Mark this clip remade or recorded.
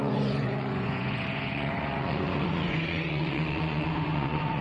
remade